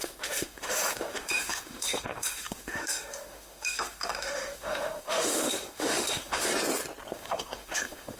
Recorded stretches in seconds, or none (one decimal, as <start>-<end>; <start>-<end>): 6.5-7.1